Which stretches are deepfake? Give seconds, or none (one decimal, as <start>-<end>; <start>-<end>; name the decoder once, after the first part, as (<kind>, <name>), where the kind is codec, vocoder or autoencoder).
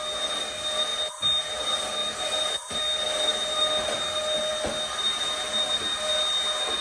2.0-2.8 (vocoder, BigVGAN v2)